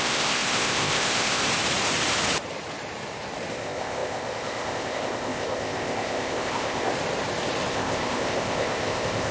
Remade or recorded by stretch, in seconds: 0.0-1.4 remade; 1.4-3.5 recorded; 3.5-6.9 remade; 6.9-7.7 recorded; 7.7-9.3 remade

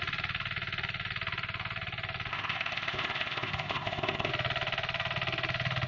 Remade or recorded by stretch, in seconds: 0.0-2.3 recorded; 2.3-4.3 remade; 4.3-5.9 recorded

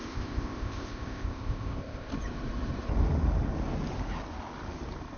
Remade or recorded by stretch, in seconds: 0.0-2.1 remade; 2.1-5.2 recorded

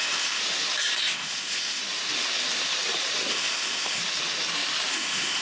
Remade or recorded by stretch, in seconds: 0.0-0.4 remade; 0.4-1.0 recorded; 1.0-1.8 remade; 1.8-3.3 recorded; 3.3-4.0 remade; 4.0-4.9 recorded; 4.9-5.4 remade

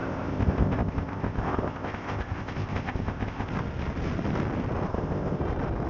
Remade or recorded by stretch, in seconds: 0.0-3.5 remade; 3.5-4.9 recorded; 4.9-5.4 remade; 5.4-5.9 recorded